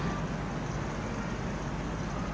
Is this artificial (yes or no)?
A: no